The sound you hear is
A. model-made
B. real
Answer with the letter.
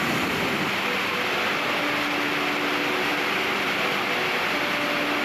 B